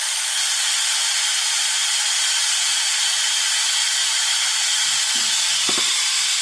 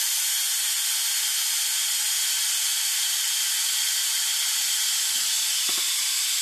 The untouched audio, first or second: second